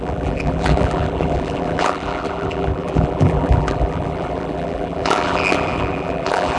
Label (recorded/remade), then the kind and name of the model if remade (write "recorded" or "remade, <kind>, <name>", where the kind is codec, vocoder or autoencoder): remade, vocoder, BigVGAN v2